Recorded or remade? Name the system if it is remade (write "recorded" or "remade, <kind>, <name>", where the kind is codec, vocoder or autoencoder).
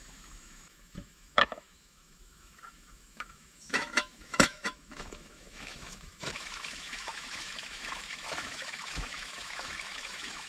remade, autoencoder, DAC-VAE